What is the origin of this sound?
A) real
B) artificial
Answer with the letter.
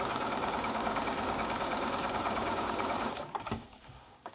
B